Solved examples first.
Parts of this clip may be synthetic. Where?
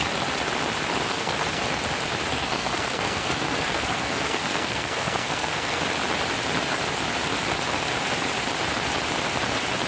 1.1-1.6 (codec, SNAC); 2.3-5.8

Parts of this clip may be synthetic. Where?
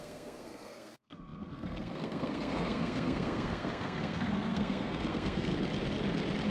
0.0-5.5 (codec, SNAC)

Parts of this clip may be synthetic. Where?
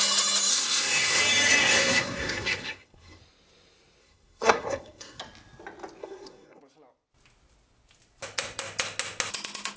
0.5-1.2 (codec, SNAC); 1.6-3.2; 4.0-5.2; 6.0-6.6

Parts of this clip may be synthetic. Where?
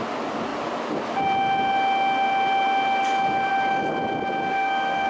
4.5-5.1 (codec, SNAC)